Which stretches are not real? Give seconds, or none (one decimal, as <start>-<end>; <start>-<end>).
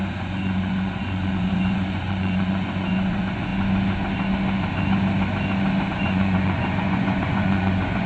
0.0-3.5; 5.9-8.1